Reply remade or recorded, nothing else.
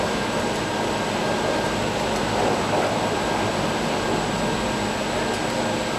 recorded